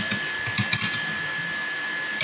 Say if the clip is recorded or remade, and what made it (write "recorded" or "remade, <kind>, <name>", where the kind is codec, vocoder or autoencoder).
recorded